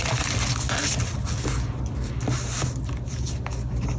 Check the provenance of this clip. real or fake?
real